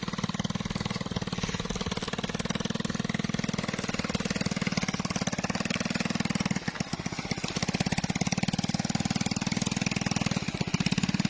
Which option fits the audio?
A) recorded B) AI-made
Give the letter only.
A